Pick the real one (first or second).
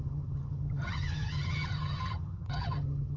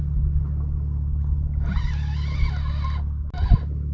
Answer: second